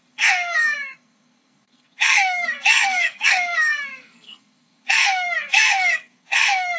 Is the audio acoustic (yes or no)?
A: no